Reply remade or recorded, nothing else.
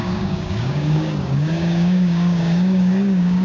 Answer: remade